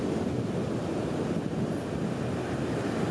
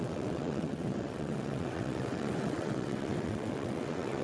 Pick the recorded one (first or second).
first